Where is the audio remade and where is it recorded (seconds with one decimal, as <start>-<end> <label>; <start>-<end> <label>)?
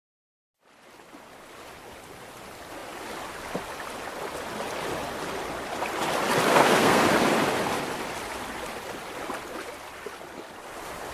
0.0-6.5 recorded; 6.5-7.0 remade; 7.0-11.1 recorded